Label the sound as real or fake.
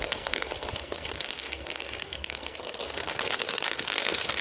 fake